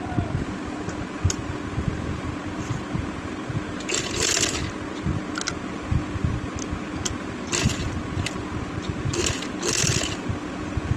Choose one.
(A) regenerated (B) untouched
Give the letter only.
B